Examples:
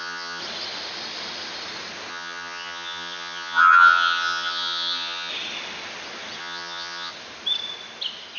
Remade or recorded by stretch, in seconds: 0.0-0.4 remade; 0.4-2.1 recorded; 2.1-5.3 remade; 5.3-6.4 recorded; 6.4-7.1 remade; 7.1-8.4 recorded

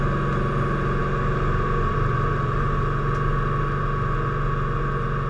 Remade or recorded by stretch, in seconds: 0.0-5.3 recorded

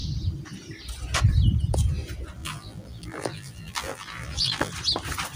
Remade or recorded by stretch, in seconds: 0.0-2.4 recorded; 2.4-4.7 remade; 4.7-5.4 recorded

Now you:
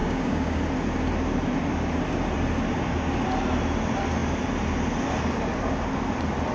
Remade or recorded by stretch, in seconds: 0.0-0.6 remade; 0.6-6.5 recorded

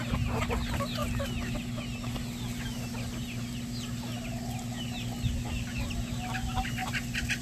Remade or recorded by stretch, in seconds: 0.0-7.4 recorded